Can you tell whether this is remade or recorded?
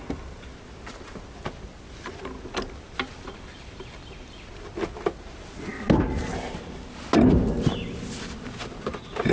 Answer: recorded